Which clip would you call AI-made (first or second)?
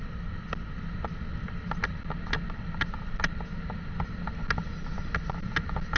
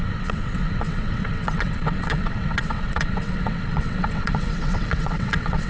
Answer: second